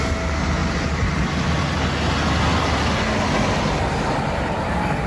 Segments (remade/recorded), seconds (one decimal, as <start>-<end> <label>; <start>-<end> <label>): 0.0-5.1 recorded